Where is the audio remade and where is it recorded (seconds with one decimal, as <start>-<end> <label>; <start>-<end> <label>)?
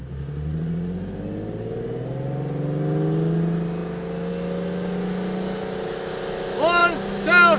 0.0-7.6 recorded